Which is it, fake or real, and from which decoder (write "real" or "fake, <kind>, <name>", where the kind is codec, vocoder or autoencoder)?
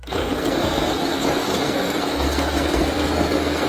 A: fake, codec, SNAC